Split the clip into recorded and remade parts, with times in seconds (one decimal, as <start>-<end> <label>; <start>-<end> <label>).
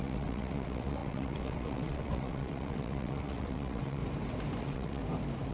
0.0-4.0 remade; 4.0-4.6 recorded; 4.6-5.0 remade; 5.0-5.5 recorded